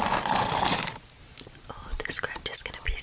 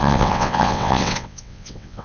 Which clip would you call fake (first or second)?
second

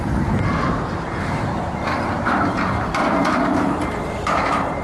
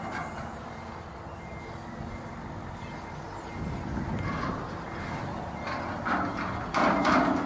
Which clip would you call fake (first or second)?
first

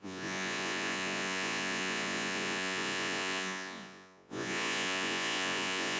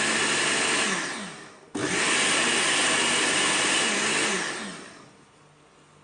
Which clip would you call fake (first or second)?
first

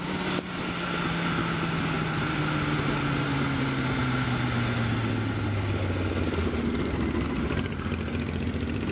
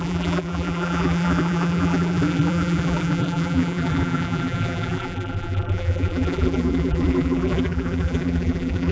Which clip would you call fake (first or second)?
second